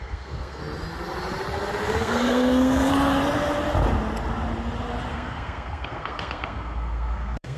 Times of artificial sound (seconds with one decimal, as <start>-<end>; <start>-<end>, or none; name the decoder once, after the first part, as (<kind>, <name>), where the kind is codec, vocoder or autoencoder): 0.0-0.6 (codec, SNAC); 2.0-2.9; 5.1-7.6